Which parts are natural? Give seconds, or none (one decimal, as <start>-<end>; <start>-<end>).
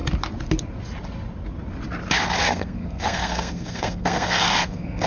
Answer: 0.0-2.4